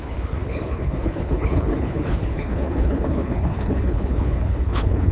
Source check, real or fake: fake